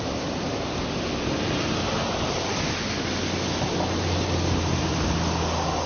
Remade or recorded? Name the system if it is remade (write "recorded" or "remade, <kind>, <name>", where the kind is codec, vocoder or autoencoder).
recorded